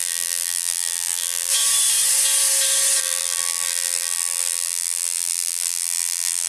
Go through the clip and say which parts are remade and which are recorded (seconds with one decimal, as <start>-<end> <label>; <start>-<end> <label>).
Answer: 0.0-1.5 remade; 1.5-3.0 recorded; 3.0-6.5 remade